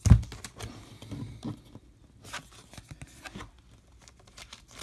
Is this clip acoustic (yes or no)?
yes